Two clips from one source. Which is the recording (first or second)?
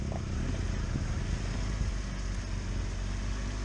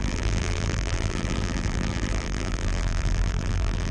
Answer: first